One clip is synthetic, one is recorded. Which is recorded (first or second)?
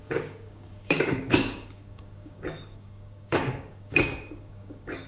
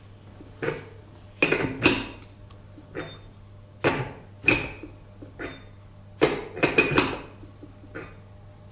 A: second